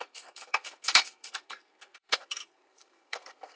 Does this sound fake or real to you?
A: fake